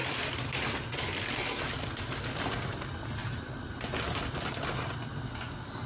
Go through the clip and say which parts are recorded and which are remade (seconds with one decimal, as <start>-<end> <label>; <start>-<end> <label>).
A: 0.0-3.2 recorded; 3.2-3.7 remade; 3.7-5.9 recorded